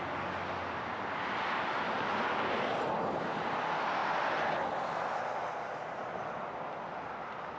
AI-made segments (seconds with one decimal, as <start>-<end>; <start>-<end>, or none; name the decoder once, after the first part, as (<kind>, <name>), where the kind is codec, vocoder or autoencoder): none